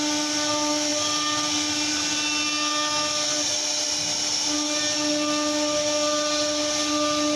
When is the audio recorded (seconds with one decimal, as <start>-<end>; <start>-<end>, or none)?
0.0-7.4